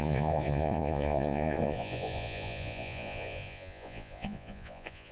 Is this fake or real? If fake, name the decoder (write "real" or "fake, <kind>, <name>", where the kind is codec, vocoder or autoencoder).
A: fake, vocoder, Vocos